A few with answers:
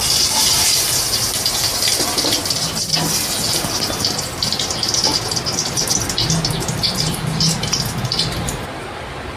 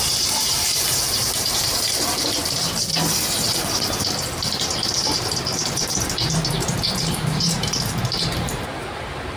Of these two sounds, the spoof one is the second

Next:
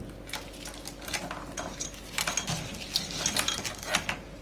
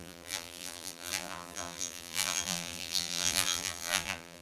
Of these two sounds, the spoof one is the second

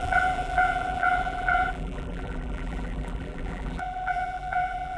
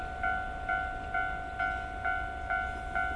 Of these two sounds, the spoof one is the first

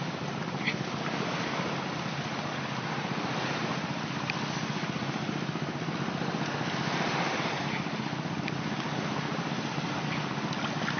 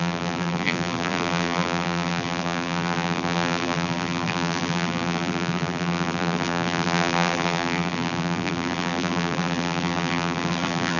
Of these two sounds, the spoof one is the second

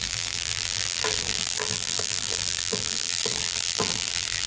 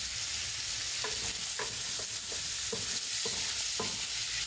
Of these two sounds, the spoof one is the first